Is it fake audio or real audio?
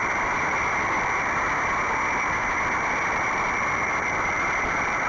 real